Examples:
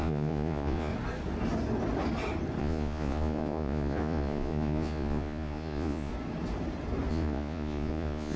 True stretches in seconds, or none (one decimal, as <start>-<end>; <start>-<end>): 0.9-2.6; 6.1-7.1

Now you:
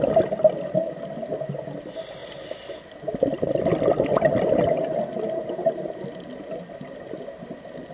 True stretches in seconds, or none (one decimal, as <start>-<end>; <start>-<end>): 0.0-7.9

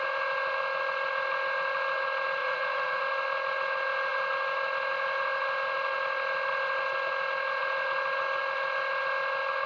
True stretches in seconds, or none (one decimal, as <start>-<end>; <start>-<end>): 0.0-2.4; 3.0-9.7

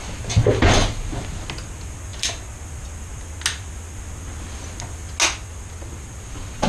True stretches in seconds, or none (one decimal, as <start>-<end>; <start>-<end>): 0.0-6.7

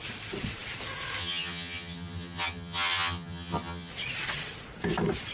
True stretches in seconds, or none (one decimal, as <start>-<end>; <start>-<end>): 0.0-1.2; 3.9-5.3